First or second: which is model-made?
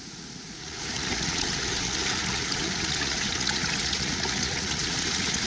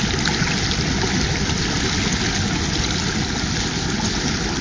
first